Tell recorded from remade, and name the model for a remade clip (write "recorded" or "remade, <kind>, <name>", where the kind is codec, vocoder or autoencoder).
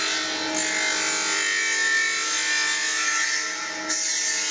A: recorded